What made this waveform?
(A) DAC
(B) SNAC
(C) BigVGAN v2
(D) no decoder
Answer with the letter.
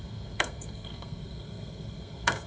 B